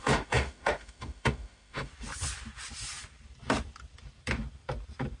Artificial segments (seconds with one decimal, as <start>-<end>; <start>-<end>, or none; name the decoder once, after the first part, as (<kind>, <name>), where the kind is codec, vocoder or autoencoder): 0.0-1.9 (autoencoder, DAC-VAE)